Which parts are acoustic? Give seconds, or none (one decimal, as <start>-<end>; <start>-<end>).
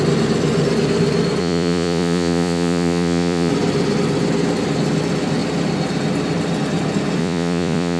0.0-1.4; 3.5-7.2